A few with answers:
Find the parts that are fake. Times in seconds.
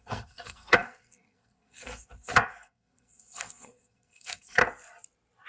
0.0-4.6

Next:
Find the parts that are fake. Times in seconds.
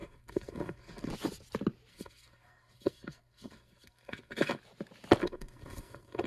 0.0-1.1; 1.9-4.6; 5.2-6.3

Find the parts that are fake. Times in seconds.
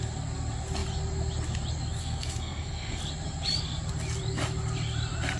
2.0-3.0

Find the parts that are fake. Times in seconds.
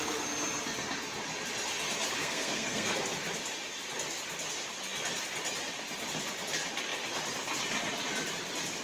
2.2-3.0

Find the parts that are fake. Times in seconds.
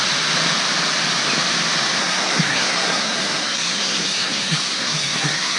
2.0-5.6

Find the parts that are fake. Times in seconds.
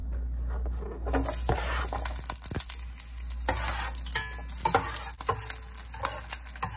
none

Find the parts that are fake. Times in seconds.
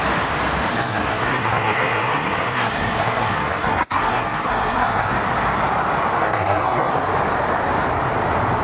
0.7-5.1; 6.2-6.9